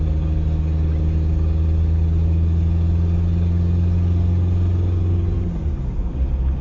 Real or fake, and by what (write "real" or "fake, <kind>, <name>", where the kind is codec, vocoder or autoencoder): real